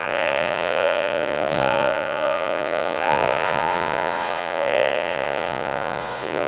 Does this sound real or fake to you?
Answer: fake